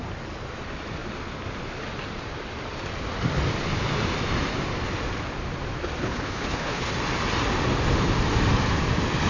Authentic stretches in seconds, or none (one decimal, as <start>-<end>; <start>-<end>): 0.0-6.0; 6.9-9.3